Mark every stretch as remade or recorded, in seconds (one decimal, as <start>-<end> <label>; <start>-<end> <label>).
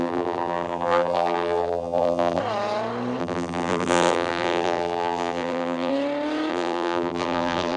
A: 0.0-2.4 remade; 2.4-3.2 recorded; 3.2-5.9 remade; 5.9-6.5 recorded; 6.5-7.8 remade